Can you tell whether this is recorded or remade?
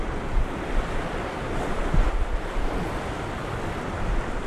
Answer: recorded